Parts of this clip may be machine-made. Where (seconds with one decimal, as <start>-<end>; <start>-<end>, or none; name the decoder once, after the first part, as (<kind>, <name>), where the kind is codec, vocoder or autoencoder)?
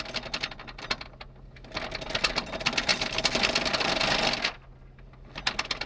none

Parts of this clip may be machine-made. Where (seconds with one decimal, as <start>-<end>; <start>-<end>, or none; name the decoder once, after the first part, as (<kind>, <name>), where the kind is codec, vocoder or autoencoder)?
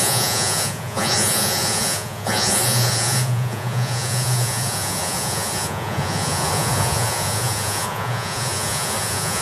0.0-9.4 (vocoder, Vocos)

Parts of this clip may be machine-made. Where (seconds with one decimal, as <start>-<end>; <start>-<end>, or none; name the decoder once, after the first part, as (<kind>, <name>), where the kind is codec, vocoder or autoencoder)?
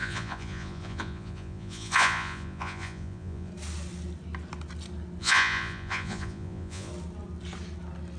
0.0-3.5 (vocoder, Vocos); 5.2-6.9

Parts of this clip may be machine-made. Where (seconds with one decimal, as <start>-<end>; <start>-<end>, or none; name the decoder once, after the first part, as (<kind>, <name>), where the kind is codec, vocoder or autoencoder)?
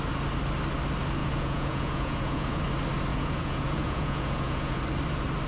1.2-2.6 (vocoder, Vocos); 3.1-4.8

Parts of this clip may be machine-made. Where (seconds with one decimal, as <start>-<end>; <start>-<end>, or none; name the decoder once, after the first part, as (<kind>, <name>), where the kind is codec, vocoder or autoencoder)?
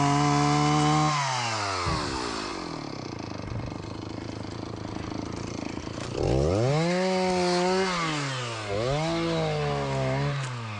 none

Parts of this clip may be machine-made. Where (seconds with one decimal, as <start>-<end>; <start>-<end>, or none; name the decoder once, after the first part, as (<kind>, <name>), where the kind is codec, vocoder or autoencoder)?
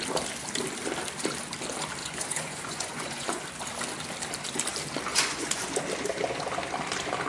2.0-3.4 (vocoder, Vocos); 5.1-5.7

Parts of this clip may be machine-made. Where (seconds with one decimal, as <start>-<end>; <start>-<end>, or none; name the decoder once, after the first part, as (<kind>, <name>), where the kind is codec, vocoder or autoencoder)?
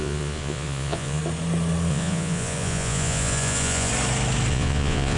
0.0-1.2 (vocoder, Vocos); 1.9-3.9; 4.5-5.2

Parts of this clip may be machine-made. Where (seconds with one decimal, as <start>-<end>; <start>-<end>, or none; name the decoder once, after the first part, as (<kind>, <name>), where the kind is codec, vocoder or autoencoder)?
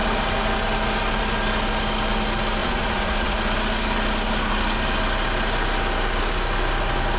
2.6-3.4 (vocoder, Vocos)